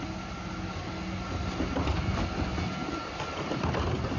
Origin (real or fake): real